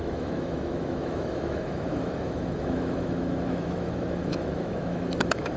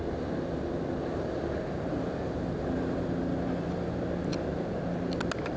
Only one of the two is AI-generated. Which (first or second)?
first